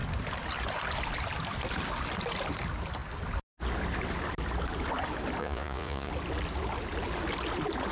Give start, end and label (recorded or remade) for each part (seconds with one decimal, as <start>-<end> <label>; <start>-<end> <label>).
0.0-5.4 recorded; 5.4-6.1 remade; 6.1-7.9 recorded